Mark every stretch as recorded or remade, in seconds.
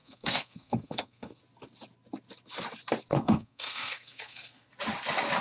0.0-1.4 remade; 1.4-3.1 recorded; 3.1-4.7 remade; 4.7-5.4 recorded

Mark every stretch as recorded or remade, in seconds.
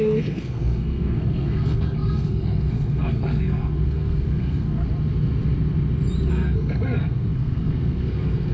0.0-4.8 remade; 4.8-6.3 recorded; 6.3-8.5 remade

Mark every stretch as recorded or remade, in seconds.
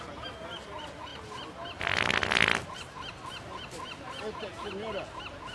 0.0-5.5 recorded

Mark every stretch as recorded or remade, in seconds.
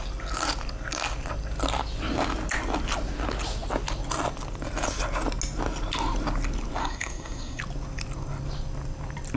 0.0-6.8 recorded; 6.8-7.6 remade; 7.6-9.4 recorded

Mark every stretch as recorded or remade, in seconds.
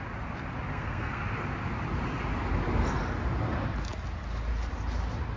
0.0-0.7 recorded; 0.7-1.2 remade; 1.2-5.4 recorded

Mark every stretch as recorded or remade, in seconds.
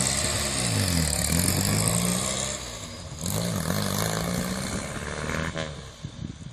0.0-6.5 recorded